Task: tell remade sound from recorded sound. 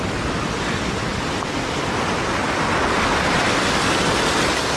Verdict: recorded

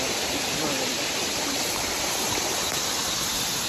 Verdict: remade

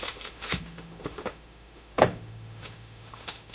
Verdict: remade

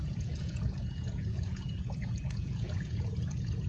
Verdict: remade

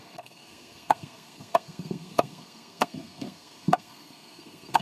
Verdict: remade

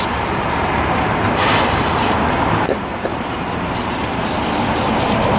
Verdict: remade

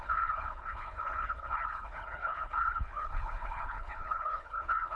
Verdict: remade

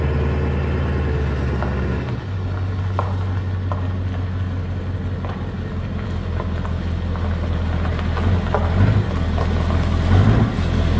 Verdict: recorded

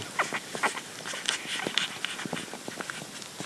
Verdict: recorded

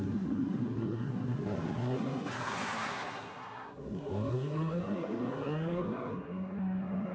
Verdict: remade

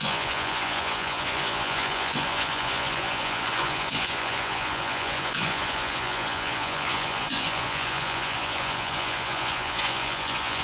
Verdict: remade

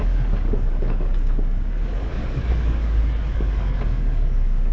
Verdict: remade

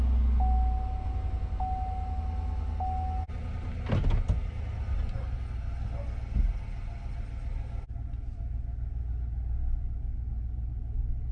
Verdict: recorded